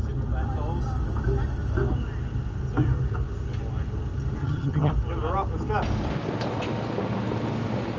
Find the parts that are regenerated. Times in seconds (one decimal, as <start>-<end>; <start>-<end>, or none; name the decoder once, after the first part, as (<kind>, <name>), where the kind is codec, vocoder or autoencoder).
4.4-4.9 (vocoder, HiFi-GAN)